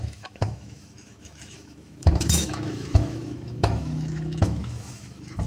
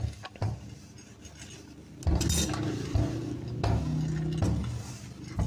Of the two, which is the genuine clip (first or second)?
second